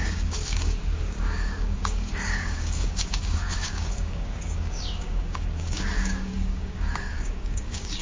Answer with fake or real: fake